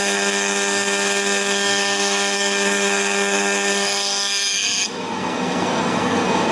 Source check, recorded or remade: remade